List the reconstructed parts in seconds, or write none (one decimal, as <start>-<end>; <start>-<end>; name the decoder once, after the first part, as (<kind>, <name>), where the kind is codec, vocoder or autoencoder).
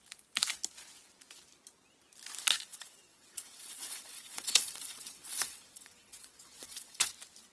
2.7-7.1 (vocoder, WaveNeXt)